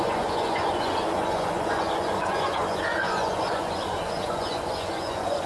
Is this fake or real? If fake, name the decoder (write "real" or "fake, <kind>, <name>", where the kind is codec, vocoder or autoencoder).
fake, vocoder, Vocos